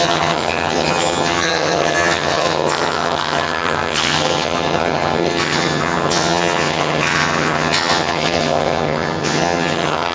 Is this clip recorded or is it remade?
remade